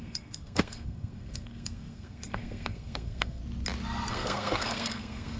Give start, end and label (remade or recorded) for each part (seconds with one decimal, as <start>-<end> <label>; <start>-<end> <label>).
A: 0.0-3.4 remade; 3.4-4.1 recorded; 4.1-5.4 remade